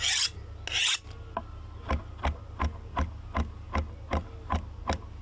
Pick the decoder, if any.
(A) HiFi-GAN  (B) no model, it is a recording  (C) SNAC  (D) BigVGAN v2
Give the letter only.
B